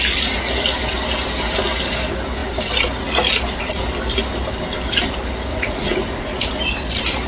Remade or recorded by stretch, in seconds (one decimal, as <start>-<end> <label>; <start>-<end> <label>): 0.0-5.5 recorded; 5.5-6.5 remade; 6.5-7.3 recorded